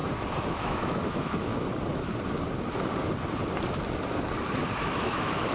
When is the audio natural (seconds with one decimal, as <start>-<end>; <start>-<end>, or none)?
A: 0.0-0.5; 1.5-4.8